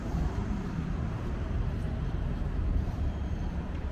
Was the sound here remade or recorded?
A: remade